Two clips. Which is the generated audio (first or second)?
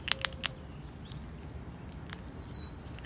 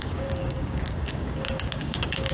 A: second